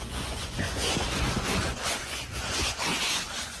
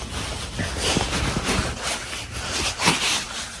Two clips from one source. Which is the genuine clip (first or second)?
second